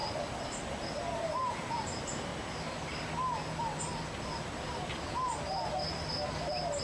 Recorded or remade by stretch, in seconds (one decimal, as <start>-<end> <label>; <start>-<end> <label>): 0.0-1.5 recorded; 1.5-2.3 remade; 2.3-6.8 recorded